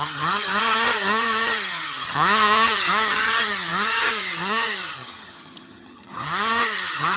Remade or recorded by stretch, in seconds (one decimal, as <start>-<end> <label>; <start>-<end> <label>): 0.0-7.2 remade